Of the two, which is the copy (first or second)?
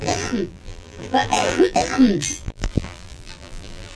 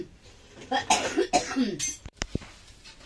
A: first